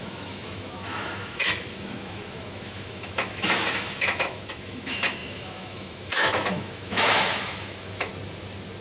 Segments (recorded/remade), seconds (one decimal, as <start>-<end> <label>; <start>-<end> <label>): 0.0-8.1 remade; 8.1-8.8 recorded